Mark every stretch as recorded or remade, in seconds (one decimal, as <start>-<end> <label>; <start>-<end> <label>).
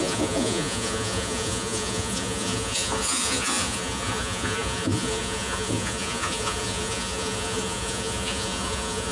0.0-9.1 remade